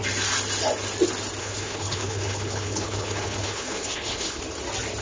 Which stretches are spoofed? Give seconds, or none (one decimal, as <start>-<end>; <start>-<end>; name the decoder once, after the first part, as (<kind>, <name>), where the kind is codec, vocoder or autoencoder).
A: 1.4-4.4 (codec, HILCodec)